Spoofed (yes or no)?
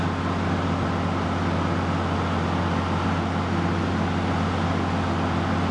no